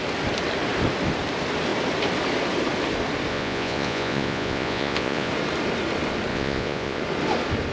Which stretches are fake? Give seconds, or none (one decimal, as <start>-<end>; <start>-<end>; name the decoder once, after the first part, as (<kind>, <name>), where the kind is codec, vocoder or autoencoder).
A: 3.3-5.3 (vocoder, Vocos); 6.3-7.0